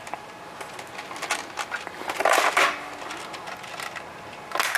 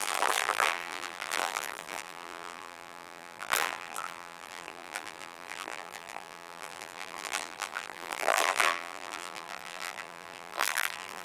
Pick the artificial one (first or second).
second